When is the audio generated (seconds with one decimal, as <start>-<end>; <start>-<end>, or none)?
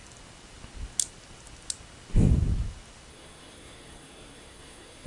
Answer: 3.1-5.1